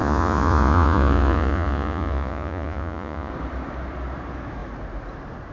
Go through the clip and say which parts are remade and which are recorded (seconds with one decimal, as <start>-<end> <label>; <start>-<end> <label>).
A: 0.0-3.3 remade; 3.3-5.5 recorded